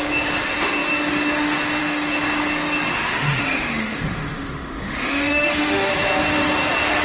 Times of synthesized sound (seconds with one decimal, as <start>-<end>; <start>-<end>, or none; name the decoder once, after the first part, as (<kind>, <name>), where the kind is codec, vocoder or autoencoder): 2.9-5.9 (autoencoder, DAC-VAE)